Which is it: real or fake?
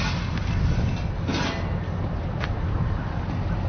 real